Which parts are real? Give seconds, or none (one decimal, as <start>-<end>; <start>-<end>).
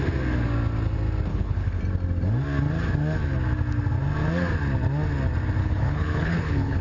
0.0-1.3; 1.8-5.6